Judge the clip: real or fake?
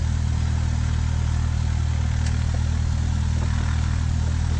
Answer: real